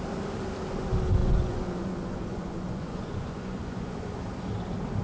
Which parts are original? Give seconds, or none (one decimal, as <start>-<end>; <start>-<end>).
0.0-1.2; 4.2-5.0